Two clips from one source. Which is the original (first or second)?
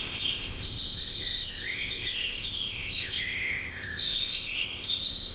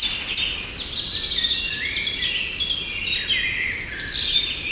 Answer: second